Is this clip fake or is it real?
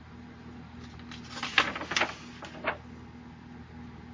real